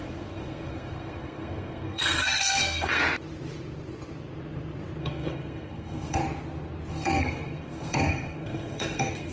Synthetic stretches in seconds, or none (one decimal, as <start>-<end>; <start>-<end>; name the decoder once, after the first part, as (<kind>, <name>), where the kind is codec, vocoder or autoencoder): 0.0-3.0 (codec, SNAC); 5.0-6.2; 6.9-9.3